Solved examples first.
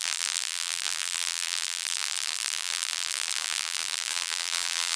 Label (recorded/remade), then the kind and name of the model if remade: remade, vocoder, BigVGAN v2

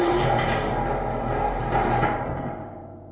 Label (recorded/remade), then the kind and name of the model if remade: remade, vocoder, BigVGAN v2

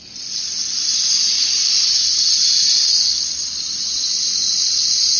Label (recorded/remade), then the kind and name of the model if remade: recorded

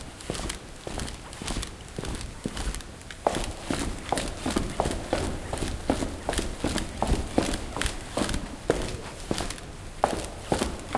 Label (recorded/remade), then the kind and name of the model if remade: recorded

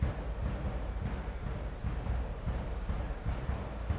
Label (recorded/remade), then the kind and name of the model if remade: remade, vocoder, BigVGAN v2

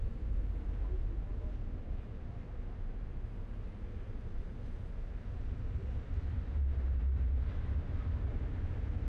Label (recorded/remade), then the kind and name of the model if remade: remade, vocoder, BigVGAN v2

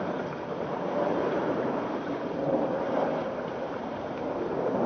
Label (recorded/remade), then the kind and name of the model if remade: remade, vocoder, BigVGAN v2